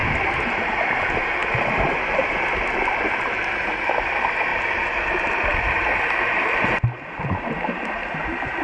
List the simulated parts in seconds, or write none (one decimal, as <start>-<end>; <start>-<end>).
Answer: 0.0-0.7; 4.5-5.3